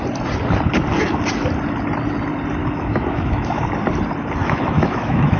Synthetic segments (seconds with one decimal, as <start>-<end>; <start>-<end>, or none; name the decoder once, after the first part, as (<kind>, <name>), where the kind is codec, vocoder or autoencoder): 2.6-3.6 (autoencoder, DAC-VAE); 4.4-5.4